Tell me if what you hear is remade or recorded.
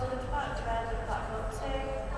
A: recorded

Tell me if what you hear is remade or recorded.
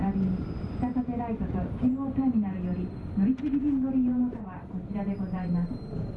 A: remade